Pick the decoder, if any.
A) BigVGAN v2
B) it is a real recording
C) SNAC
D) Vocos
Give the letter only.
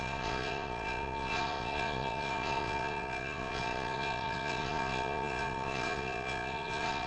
D